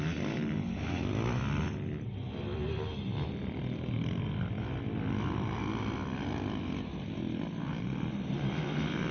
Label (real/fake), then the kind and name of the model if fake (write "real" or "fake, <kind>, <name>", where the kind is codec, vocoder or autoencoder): real